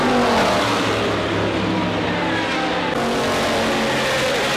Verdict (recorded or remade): recorded